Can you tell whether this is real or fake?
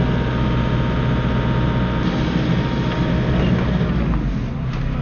real